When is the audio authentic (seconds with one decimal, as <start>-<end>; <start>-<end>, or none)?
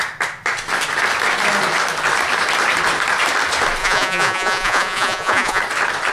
0.0-3.8; 5.6-6.1